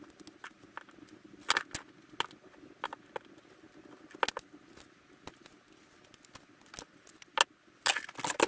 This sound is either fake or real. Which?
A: real